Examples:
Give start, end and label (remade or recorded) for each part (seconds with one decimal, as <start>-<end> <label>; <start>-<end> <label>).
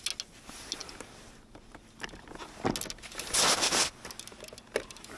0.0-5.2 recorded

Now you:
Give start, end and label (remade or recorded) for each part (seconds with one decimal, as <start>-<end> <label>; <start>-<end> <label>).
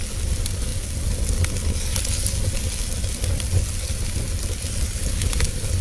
0.0-5.8 recorded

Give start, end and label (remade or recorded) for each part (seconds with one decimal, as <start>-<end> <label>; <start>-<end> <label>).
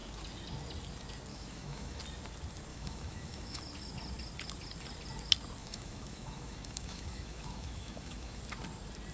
0.0-1.3 recorded; 1.3-2.0 remade; 2.0-2.7 recorded; 2.7-3.6 remade; 3.6-5.6 recorded; 5.6-8.4 remade; 8.4-9.1 recorded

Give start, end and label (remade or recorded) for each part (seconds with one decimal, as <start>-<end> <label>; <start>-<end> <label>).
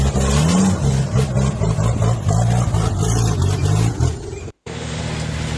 0.0-4.4 recorded; 4.4-5.0 remade; 5.0-5.6 recorded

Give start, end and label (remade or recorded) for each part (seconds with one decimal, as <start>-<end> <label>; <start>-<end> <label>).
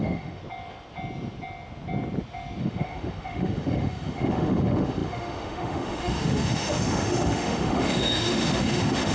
0.0-0.4 remade; 0.4-2.6 recorded; 2.6-9.1 remade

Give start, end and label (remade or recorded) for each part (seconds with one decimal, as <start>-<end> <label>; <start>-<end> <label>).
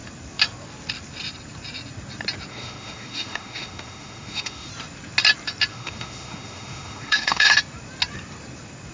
0.0-2.5 recorded; 2.5-4.7 remade; 4.7-5.7 recorded; 5.7-7.5 remade; 7.5-8.9 recorded